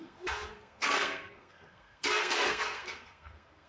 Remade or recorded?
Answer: remade